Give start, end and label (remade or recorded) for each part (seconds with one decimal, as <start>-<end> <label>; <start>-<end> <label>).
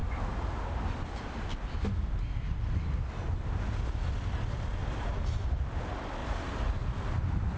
0.0-4.8 recorded; 4.8-5.5 remade; 5.5-6.2 recorded; 6.2-6.7 remade; 6.7-7.6 recorded